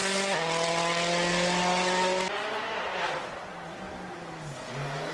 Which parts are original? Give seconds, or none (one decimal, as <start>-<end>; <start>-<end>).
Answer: 0.0-5.1

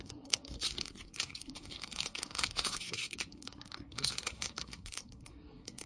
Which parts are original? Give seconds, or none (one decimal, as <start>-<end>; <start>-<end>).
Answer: none

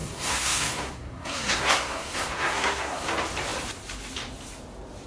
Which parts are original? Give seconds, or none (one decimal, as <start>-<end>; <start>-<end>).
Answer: 3.1-5.1

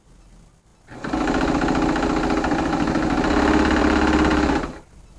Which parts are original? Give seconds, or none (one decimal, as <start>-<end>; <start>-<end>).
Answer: 0.0-5.2

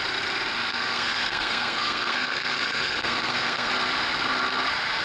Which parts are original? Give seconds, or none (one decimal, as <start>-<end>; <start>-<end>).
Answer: 0.0-0.7; 3.7-5.0